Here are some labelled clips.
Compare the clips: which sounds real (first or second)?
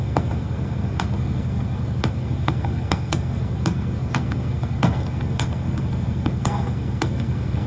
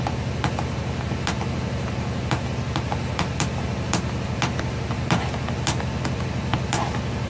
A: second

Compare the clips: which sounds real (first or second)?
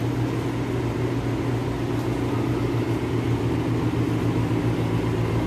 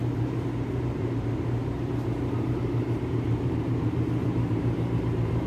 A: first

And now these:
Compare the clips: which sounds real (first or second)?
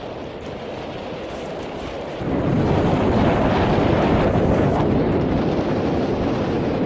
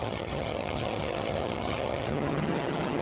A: first